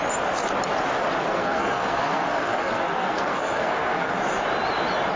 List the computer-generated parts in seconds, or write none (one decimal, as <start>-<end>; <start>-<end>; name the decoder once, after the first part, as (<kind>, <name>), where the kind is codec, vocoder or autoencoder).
1.2-4.2 (codec, SNAC)